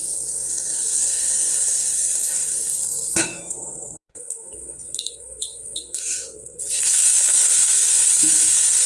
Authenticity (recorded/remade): remade